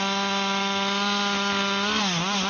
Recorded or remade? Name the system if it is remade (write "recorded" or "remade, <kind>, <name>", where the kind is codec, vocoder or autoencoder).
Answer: recorded